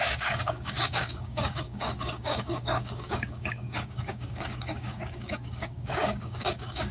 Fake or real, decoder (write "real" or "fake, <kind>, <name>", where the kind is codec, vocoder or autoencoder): fake, codec, DAC